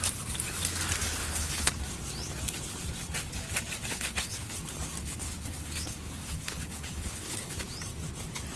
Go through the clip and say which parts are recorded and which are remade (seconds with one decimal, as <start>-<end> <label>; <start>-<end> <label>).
0.0-1.2 recorded; 1.2-1.7 remade; 1.7-3.9 recorded; 3.9-4.6 remade; 4.6-5.0 recorded; 5.0-7.5 remade; 7.5-8.6 recorded